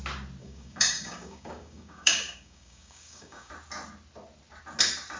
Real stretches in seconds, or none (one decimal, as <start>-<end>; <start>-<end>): 0.0-0.4; 3.5-5.2